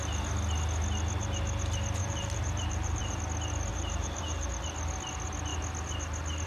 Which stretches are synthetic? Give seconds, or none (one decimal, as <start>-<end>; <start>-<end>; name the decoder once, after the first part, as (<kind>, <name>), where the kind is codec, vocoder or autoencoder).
2.0-3.2 (vocoder, BigVGAN v2); 3.7-4.5